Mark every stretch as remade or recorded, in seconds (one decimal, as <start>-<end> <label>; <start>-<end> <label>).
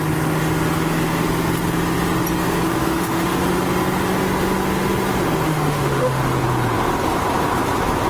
0.0-2.7 recorded; 2.7-3.4 remade; 3.4-5.5 recorded; 5.5-6.2 remade; 6.2-8.1 recorded